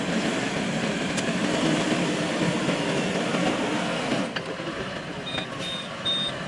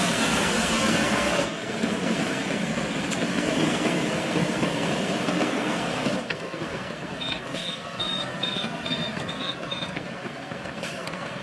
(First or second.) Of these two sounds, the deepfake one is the second